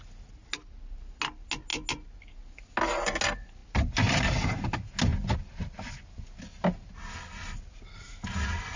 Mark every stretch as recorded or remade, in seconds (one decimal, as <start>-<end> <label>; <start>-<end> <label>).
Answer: 0.0-8.8 recorded